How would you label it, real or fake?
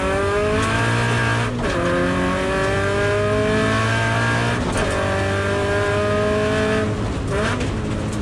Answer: real